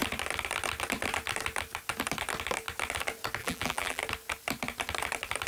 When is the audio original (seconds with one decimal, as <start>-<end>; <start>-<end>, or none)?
0.0-3.4; 4.0-5.5